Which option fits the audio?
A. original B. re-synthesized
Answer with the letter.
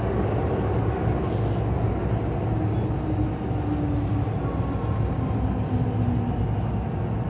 A